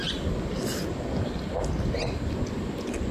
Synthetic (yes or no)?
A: no